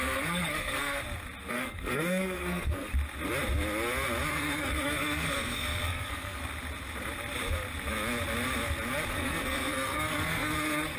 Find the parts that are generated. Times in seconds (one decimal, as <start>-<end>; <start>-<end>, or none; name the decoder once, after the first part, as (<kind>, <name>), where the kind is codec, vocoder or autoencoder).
0.0-1.0 (codec, SNAC); 1.5-2.9; 4.3-6.4; 9.1-11.0